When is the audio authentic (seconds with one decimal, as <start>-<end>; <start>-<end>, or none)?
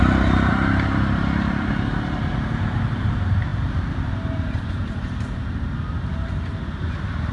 0.5-2.3; 5.4-7.3